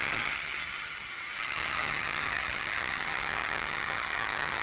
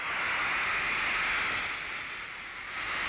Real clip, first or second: second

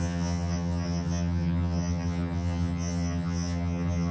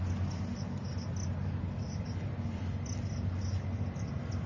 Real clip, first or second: second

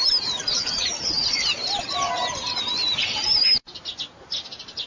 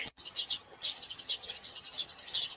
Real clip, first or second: first